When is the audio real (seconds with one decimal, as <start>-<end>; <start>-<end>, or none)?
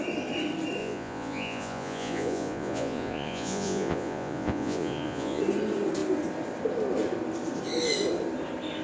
0.0-0.8; 5.4-8.8